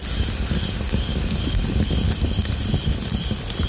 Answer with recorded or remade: recorded